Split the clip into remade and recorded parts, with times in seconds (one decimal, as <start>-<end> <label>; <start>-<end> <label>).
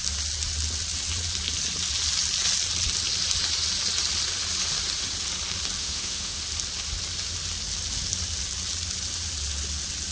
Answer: 0.0-5.8 recorded; 5.8-6.4 remade; 6.4-10.1 recorded